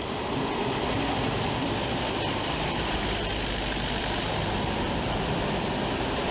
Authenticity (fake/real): fake